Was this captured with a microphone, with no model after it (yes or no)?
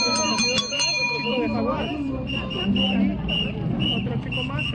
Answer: yes